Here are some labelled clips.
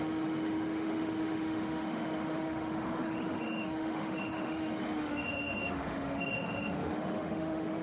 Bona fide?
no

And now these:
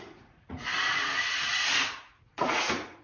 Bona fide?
no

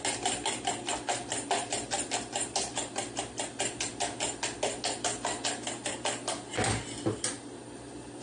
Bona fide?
yes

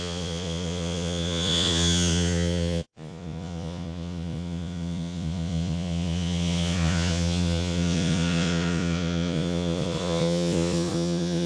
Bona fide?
no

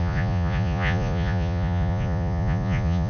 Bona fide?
no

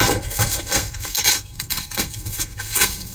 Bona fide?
no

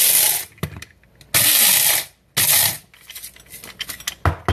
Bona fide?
yes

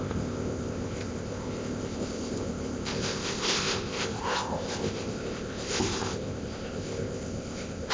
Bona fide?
no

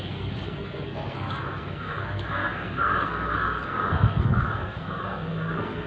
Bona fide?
no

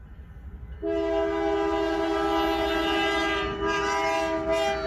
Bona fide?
yes